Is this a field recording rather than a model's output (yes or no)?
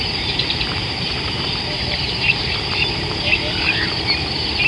no